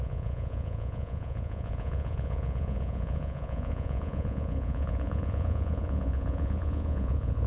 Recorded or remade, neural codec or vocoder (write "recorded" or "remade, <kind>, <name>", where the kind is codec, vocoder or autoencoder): remade, vocoder, Vocos